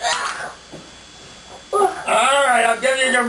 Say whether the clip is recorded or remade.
recorded